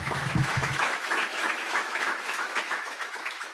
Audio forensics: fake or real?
fake